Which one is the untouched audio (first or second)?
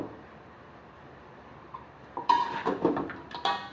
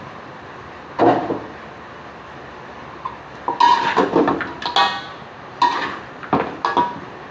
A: second